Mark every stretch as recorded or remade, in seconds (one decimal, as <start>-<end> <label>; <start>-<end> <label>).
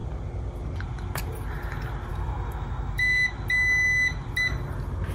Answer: 0.0-2.1 recorded; 2.1-3.3 remade; 3.3-5.1 recorded